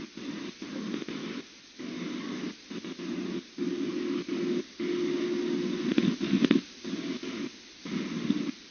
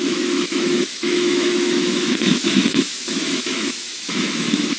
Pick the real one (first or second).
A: first